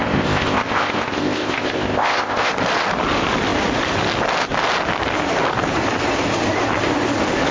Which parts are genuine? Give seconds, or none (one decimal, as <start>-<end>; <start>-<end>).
2.5-7.5